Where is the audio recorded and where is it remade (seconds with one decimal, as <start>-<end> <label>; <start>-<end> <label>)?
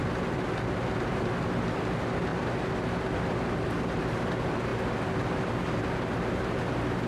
0.0-7.1 recorded